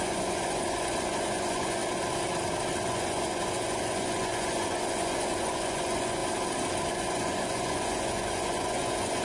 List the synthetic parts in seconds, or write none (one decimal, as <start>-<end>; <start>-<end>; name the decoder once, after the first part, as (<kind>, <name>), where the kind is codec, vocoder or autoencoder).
0.0-1.8 (vocoder, Vocos); 2.8-6.2; 6.9-9.2

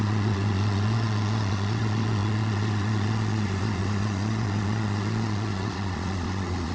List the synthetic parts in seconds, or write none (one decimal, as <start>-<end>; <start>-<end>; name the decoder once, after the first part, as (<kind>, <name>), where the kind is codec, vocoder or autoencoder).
0.0-6.7 (vocoder, Vocos)

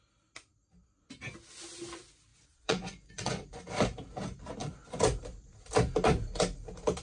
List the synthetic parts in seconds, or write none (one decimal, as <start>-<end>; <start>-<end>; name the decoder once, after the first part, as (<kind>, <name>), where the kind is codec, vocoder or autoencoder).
2.3-3.6 (vocoder, Vocos)

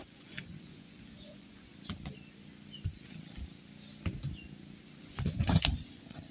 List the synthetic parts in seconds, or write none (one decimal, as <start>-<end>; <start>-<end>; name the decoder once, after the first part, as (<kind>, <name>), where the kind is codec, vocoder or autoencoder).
0.0-1.7 (vocoder, Vocos); 5.0-6.3

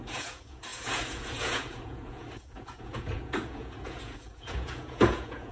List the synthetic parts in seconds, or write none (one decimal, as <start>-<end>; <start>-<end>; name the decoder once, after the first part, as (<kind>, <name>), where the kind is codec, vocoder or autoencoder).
0.0-5.5 (vocoder, Vocos)

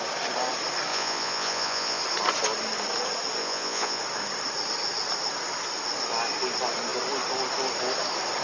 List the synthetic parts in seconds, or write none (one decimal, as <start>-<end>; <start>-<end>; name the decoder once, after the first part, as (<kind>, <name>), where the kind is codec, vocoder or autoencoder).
0.9-2.0 (vocoder, Vocos); 3.4-4.0

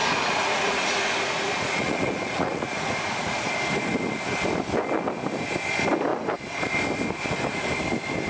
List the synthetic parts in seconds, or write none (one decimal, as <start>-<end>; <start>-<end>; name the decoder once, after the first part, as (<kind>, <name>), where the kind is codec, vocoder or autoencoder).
0.0-3.5 (vocoder, Vocos)

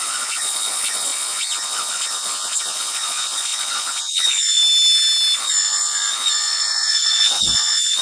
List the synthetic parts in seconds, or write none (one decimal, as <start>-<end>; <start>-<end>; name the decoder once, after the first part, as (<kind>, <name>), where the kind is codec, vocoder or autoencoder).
0.0-4.6 (vocoder, Vocos); 5.4-8.0